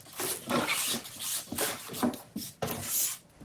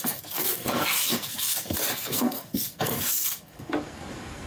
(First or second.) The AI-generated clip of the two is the second